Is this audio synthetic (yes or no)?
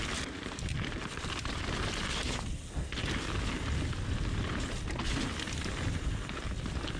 no